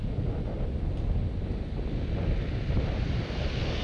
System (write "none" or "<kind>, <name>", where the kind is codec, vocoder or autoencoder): none